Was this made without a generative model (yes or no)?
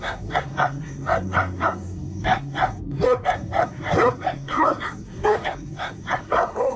no